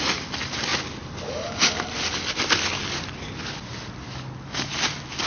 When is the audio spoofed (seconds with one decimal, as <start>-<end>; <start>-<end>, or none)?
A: none